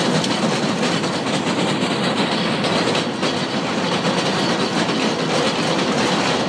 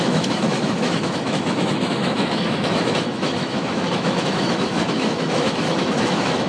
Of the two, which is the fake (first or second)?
second